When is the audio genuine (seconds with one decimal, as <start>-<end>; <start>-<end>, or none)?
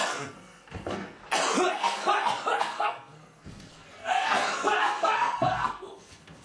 1.2-1.7; 2.1-2.6